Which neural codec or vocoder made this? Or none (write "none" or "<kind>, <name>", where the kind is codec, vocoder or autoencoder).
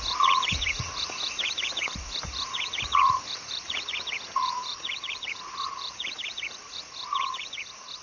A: vocoder, Vocos